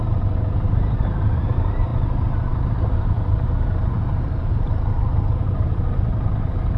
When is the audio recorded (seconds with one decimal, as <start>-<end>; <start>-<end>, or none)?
none